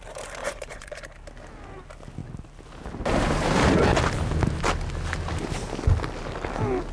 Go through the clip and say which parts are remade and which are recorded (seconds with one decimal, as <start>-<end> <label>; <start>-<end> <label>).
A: 0.0-0.4 recorded; 0.4-1.0 remade; 1.0-6.9 recorded